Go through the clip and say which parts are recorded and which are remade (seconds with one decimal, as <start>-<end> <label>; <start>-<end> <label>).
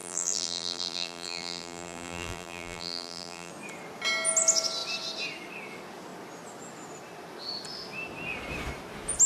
0.0-3.5 remade; 3.5-9.3 recorded